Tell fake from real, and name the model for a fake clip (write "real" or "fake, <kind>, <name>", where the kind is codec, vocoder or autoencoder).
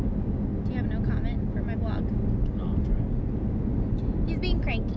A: real